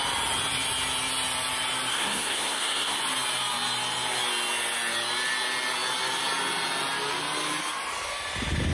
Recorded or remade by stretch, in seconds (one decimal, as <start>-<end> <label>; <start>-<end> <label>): 0.0-1.9 recorded; 1.9-3.0 remade; 3.0-8.7 recorded